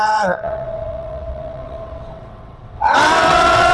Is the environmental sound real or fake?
fake